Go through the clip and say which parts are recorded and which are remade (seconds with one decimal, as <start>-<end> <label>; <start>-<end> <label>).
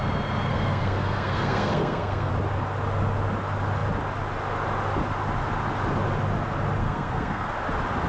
0.0-0.5 recorded; 0.5-2.3 remade; 2.3-6.8 recorded; 6.8-7.5 remade; 7.5-8.1 recorded